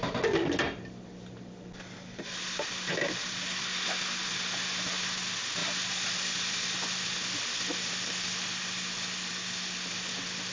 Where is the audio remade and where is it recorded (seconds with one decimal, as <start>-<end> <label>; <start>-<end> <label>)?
0.0-10.5 recorded